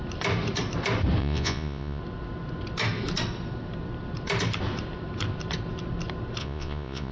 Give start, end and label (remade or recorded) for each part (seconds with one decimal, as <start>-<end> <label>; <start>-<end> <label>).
0.0-1.2 recorded; 1.2-2.0 remade; 2.0-6.4 recorded; 6.4-7.1 remade